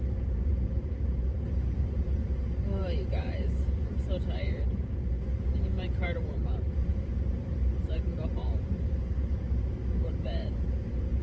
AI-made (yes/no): yes